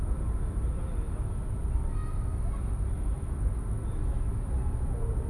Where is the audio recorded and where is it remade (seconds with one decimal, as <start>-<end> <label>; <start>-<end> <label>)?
0.0-5.3 recorded